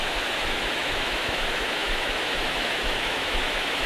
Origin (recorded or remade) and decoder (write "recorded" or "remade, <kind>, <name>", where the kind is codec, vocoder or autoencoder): remade, autoencoder, DAC-VAE